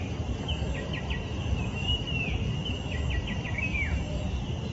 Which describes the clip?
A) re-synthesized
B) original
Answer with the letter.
B